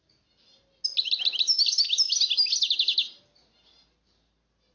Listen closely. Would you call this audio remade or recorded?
recorded